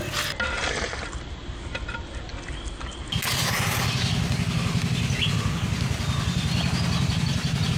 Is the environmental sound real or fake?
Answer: real